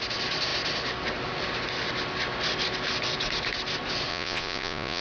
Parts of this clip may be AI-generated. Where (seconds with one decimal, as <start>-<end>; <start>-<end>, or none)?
4.1-5.0